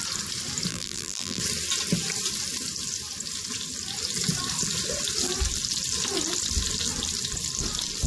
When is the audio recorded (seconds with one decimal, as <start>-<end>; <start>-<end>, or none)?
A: 0.0-0.7; 1.4-8.1